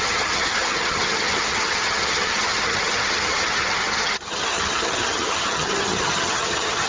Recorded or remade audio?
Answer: remade